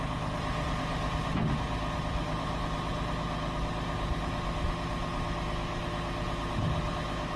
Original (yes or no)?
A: yes